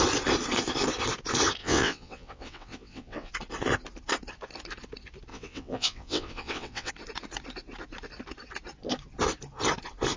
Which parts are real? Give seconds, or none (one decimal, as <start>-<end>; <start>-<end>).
0.0-1.6; 3.3-5.3; 6.9-10.2